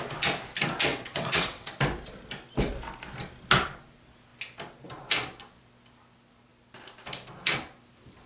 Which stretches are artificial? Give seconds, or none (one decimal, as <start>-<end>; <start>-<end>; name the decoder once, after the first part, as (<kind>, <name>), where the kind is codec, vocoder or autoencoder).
0.9-1.7 (vocoder, WaveNeXt)